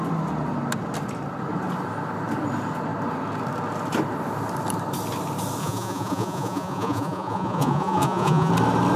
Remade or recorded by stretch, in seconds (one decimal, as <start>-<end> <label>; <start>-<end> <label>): 0.0-5.6 recorded; 5.6-8.5 remade; 8.5-9.0 recorded